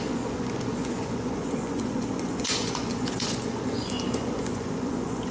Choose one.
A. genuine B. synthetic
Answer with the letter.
B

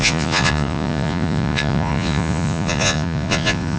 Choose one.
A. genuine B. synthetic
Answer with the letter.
B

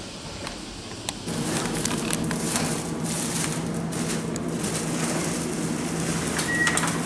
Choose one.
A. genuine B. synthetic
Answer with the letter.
A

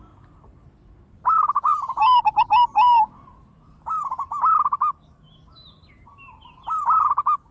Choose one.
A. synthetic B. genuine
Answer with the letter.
B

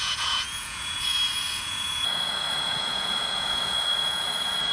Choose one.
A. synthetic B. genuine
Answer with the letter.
A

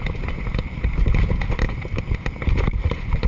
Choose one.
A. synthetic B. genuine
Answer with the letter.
B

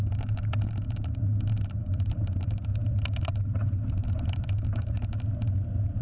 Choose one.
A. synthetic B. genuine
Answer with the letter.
B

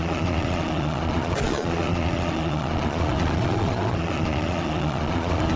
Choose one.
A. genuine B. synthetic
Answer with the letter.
B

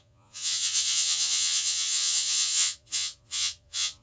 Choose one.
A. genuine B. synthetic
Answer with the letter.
B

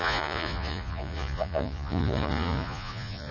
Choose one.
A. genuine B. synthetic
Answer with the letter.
B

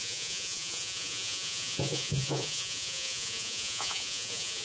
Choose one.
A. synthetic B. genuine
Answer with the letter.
A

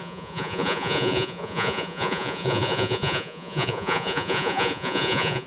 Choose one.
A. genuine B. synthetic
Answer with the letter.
B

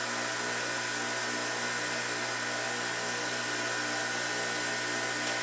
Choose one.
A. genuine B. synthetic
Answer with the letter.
A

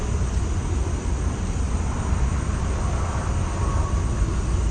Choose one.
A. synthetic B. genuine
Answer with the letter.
B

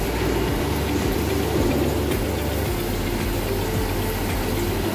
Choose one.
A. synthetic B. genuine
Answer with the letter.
B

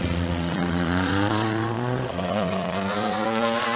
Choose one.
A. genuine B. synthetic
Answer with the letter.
B